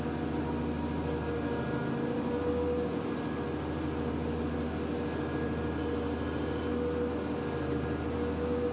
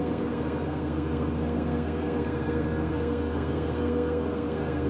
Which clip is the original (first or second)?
first